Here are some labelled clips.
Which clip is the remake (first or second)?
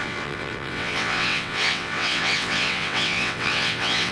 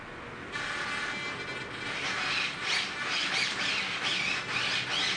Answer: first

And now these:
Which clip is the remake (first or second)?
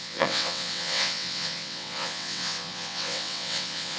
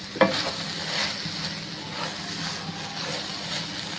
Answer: first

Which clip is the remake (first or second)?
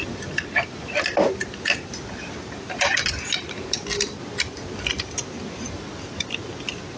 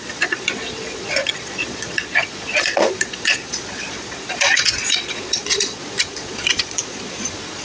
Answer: second